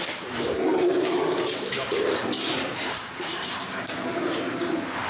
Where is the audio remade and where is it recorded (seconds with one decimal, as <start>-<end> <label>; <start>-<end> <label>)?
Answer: 0.0-0.7 recorded; 0.7-3.8 remade; 3.8-5.1 recorded